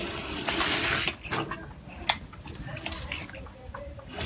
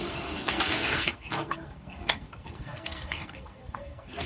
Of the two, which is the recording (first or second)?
first